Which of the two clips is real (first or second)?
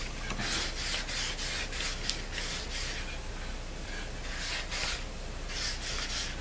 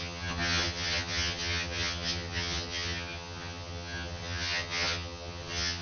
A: first